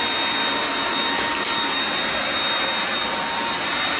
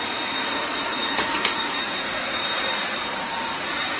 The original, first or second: first